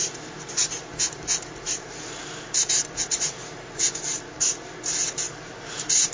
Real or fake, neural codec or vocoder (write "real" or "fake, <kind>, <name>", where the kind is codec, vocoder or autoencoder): fake, vocoder, BigVGAN v2